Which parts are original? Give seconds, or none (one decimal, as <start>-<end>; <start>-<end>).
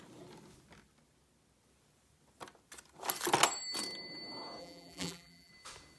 0.0-4.6; 5.5-6.0